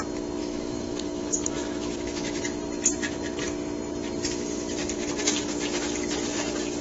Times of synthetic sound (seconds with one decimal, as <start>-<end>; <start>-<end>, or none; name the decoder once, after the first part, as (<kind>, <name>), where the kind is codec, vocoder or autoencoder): 0.4-2.4 (autoencoder, DAC-VAE)